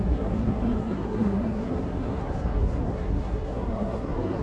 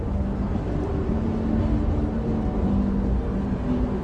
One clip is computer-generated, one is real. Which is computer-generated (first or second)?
first